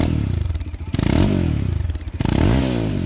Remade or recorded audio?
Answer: recorded